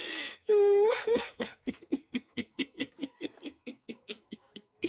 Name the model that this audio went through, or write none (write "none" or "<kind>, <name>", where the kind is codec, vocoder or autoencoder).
codec, SNAC